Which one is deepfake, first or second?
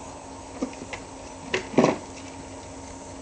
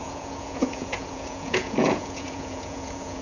second